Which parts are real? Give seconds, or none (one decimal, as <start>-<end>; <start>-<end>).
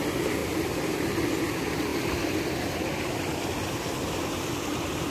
0.0-5.1